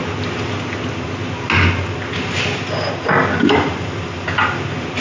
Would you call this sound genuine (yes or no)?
yes